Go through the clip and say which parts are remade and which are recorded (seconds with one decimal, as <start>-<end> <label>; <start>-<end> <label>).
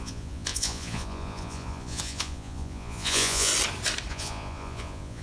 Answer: 0.0-3.5 remade; 3.5-4.1 recorded; 4.1-5.2 remade